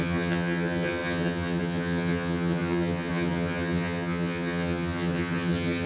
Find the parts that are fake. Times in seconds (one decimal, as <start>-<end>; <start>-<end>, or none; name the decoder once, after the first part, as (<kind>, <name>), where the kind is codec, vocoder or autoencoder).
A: 0.0-5.9 (vocoder, HiFi-GAN)